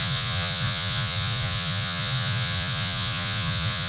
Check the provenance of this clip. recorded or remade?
remade